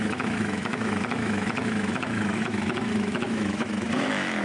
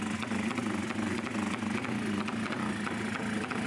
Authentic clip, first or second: second